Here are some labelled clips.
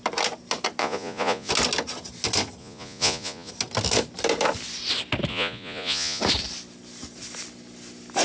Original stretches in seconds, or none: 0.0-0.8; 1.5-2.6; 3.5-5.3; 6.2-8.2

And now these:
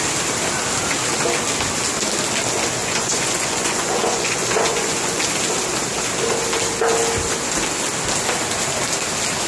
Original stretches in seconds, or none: 0.0-2.8; 5.2-9.5

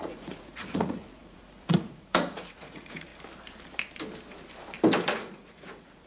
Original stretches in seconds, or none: 3.1-5.1

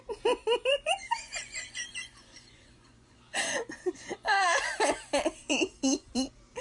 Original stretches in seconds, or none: 0.0-0.7; 4.7-5.5; 6.1-6.6